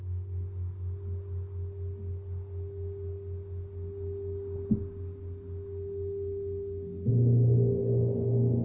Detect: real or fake real